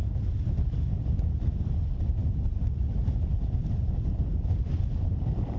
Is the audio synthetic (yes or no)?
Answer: no